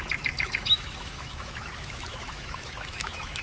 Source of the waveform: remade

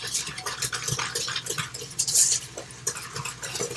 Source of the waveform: recorded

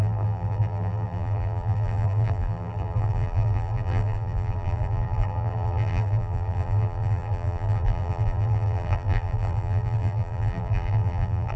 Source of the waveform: remade